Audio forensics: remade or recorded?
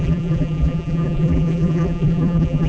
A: remade